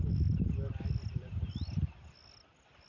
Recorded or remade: recorded